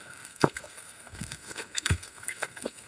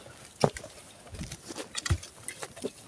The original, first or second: second